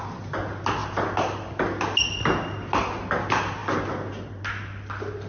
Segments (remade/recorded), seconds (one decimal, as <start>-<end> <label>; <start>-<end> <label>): 0.0-5.3 recorded